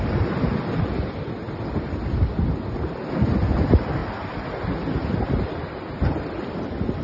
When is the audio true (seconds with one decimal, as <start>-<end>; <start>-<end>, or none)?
0.0-7.0